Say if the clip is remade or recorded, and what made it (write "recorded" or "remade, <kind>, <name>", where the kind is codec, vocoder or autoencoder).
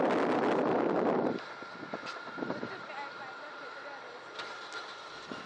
recorded